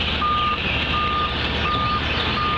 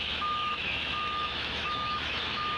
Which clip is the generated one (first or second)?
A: second